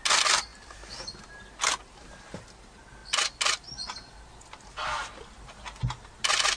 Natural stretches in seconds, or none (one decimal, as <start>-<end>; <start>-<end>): 0.0-6.6